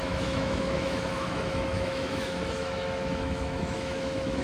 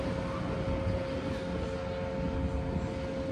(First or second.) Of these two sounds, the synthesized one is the first